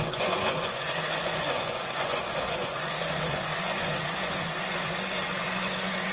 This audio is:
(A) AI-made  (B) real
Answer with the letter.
A